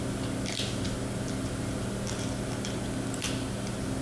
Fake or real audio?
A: real